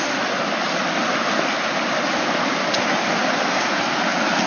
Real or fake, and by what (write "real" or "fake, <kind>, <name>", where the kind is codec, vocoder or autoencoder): real